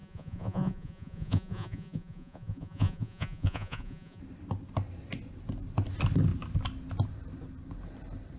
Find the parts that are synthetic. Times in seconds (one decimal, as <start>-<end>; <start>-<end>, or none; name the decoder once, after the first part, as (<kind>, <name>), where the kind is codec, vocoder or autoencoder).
0.0-4.2 (vocoder, Vocos)